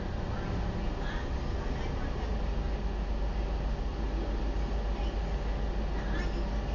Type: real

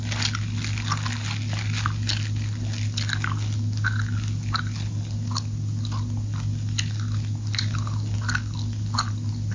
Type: real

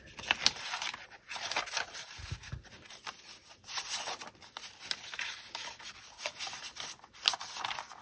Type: real